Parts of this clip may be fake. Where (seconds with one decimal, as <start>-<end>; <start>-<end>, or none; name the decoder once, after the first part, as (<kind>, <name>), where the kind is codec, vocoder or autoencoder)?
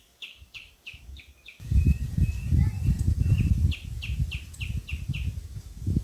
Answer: 0.0-1.8 (codec, DAC); 5.4-6.0